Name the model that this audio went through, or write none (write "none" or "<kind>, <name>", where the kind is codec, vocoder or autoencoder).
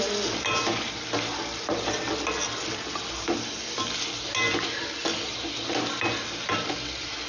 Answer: none